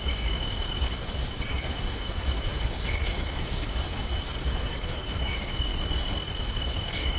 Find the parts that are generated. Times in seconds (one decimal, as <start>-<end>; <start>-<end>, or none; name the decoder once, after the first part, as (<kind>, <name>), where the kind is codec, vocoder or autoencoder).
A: 0.0-5.7 (codec, DAC); 6.4-7.2